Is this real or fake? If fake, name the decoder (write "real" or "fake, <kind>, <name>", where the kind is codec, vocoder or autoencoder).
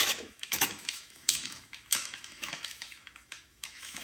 fake, autoencoder, DAC-VAE